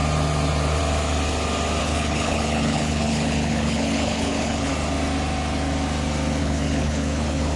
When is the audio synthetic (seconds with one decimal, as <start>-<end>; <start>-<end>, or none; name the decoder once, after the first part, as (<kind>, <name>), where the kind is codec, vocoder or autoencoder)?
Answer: 1.8-4.7 (codec, HILCodec); 6.4-7.6